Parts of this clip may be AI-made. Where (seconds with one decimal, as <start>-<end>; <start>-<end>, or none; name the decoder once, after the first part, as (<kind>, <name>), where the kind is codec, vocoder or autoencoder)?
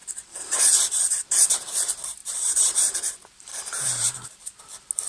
0.0-0.7 (vocoder, BigVGAN v2); 2.2-2.9; 3.5-4.6